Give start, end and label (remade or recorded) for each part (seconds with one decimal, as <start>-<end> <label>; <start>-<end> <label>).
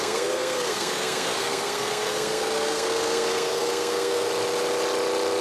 0.0-4.3 remade; 4.3-5.4 recorded